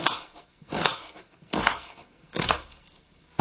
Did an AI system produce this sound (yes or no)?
yes